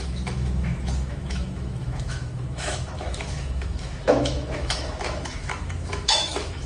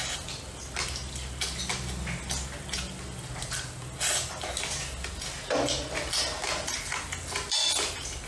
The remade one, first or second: first